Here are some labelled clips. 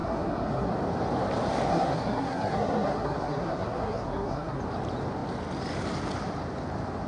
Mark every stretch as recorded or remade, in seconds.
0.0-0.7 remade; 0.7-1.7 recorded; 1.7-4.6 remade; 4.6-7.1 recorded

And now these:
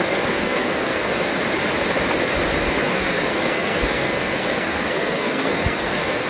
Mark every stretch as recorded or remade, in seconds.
0.0-1.3 remade; 1.3-2.7 recorded; 2.7-6.3 remade

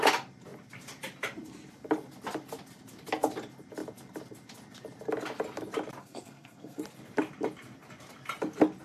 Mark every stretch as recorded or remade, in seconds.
0.0-6.0 recorded; 6.0-6.8 remade; 6.8-8.8 recorded